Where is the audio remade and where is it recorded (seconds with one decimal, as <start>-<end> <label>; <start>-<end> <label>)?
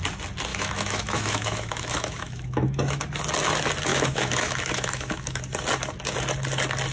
0.0-0.5 recorded; 0.5-3.0 remade; 3.0-3.9 recorded; 3.9-5.4 remade; 5.4-6.9 recorded